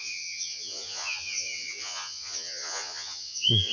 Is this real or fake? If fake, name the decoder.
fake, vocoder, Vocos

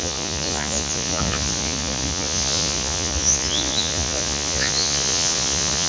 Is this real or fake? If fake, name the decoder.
fake, vocoder, Vocos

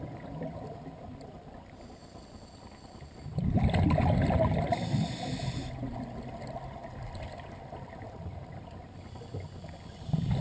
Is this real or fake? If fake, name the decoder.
real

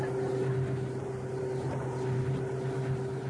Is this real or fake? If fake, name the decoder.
real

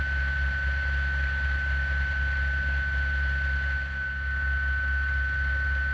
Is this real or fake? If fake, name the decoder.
real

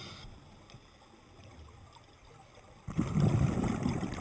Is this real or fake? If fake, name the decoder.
real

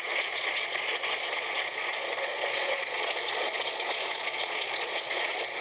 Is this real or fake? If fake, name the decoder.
fake, vocoder, Vocos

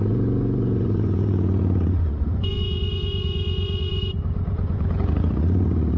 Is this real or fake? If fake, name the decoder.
fake, vocoder, Vocos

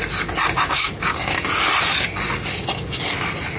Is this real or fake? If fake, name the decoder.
real